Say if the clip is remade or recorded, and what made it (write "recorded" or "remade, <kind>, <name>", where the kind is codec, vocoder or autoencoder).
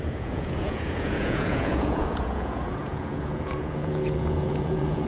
remade, vocoder, Vocos